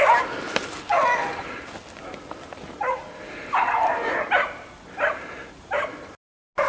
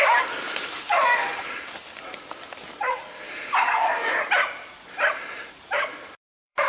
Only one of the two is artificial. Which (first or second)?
second